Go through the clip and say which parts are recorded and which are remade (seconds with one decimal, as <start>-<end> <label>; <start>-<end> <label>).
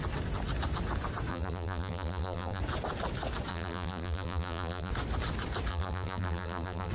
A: 0.0-1.3 recorded; 1.3-2.6 remade; 2.6-3.5 recorded; 3.5-4.9 remade; 4.9-5.7 recorded; 5.7-6.9 remade